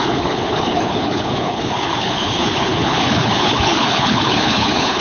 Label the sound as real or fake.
fake